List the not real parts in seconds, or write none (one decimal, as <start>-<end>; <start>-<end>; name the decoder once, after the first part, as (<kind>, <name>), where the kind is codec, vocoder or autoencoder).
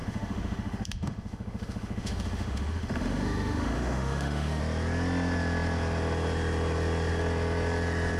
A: 0.0-4.6 (autoencoder, DAC-VAE)